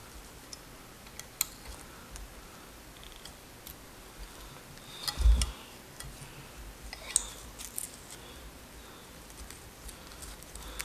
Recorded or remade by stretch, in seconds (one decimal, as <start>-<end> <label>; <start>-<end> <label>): 0.0-10.8 recorded